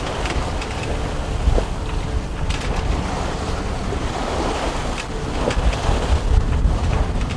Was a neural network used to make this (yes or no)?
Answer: no